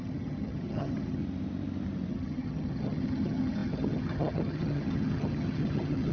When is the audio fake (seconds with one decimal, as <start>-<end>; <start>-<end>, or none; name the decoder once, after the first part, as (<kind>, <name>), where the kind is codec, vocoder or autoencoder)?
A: 0.0-1.2 (vocoder, HiFi-GAN); 2.1-6.1